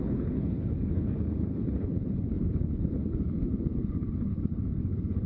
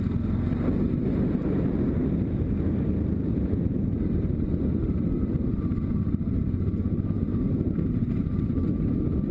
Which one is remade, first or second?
first